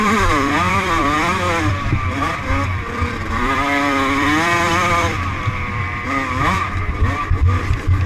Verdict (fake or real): fake